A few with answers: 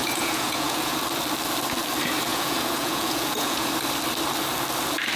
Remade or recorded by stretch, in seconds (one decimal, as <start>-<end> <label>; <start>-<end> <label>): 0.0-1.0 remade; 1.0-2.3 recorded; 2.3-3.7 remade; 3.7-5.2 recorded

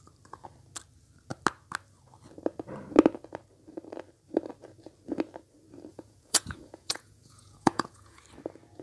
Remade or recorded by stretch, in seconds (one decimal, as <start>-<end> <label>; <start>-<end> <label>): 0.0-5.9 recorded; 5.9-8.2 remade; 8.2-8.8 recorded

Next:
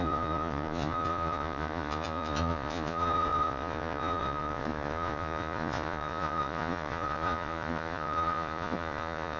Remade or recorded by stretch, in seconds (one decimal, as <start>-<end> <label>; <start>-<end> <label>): 0.0-9.4 remade

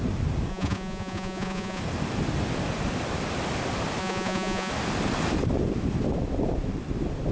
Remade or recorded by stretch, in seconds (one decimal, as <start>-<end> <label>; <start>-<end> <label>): 0.0-0.5 recorded; 0.5-1.8 remade; 1.8-4.0 recorded; 4.0-4.7 remade; 4.7-7.3 recorded

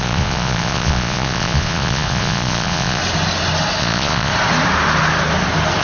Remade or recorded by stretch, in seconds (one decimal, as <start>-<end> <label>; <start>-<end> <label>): 0.0-3.0 remade; 3.0-3.8 recorded; 3.8-4.3 remade; 4.3-5.8 recorded

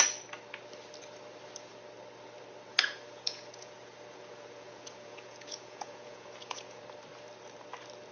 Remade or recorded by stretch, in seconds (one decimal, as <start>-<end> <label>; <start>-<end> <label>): 0.0-2.7 recorded; 2.7-6.8 remade; 6.8-8.1 recorded

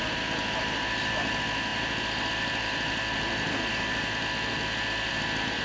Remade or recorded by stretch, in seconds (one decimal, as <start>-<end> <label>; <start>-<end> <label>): 0.0-5.6 recorded